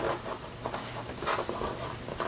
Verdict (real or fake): real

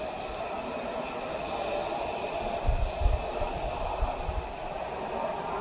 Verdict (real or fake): real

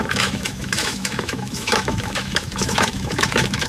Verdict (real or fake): fake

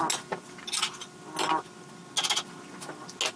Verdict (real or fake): real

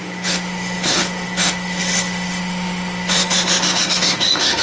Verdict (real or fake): fake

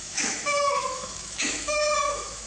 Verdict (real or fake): fake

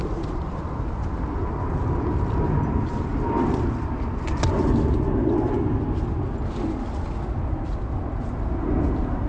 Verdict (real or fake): real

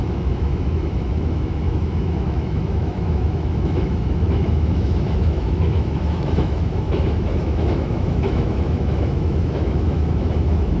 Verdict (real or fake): fake